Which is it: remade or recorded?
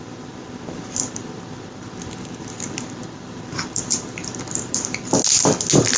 recorded